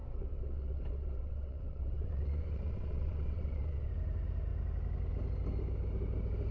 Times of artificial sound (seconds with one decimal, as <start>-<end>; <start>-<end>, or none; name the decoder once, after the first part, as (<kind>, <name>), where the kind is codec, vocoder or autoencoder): 0.0-3.9 (vocoder, WaveNeXt)